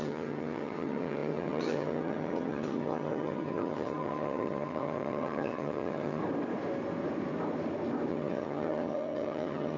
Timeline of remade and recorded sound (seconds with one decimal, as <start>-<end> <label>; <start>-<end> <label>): 0.0-6.2 remade; 6.2-8.1 recorded; 8.1-9.8 remade